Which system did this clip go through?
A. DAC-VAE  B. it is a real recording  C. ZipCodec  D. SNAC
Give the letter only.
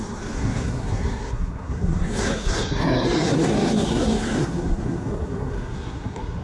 D